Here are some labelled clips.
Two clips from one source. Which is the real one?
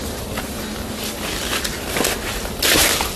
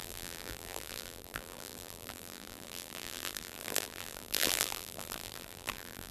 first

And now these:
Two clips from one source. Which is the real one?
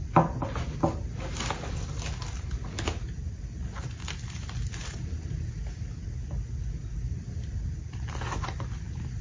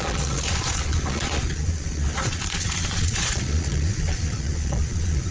first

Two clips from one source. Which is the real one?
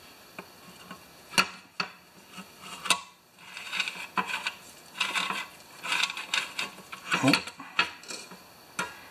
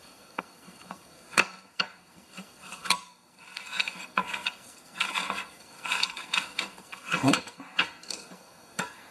first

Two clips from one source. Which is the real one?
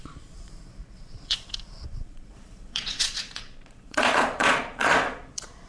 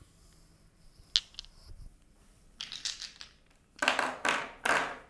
second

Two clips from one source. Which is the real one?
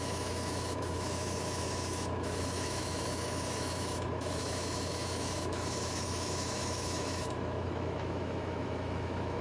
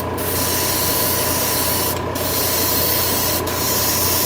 second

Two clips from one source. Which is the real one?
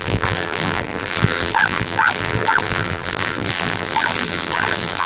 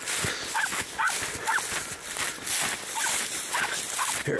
second